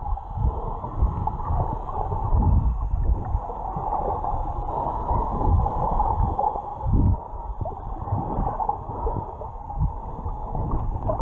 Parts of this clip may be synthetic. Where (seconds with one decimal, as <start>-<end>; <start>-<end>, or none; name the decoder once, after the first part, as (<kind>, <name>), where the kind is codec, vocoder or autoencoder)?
none